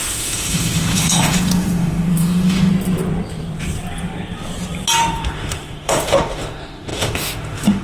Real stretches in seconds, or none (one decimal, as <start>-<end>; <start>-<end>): 2.7-5.0